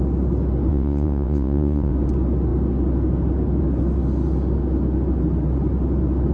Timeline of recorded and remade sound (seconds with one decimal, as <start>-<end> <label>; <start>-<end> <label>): 0.0-0.7 recorded; 0.7-1.9 remade; 1.9-6.3 recorded